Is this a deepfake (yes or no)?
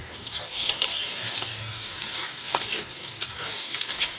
yes